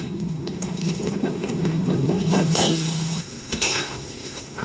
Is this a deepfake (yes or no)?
yes